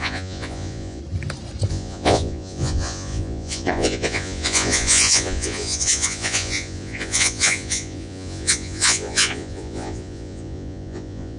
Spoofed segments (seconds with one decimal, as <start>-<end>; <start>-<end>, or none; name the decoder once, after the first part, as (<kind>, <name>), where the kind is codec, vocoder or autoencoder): 0.0-1.0 (vocoder, Vocos); 1.7-11.4